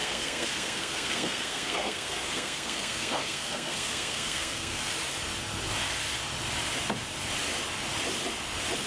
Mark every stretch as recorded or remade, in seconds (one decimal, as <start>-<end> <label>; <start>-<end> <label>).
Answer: 0.0-4.9 remade; 4.9-8.9 recorded